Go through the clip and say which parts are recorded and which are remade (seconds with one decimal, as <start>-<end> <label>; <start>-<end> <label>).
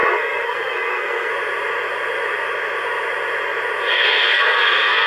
0.0-1.3 remade; 1.3-3.9 recorded; 3.9-5.1 remade